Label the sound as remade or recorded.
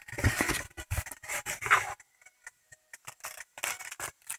recorded